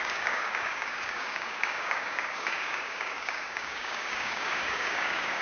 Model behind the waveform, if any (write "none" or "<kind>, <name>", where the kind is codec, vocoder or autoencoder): codec, DAC